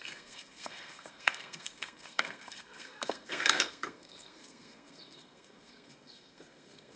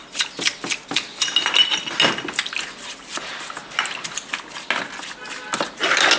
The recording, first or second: second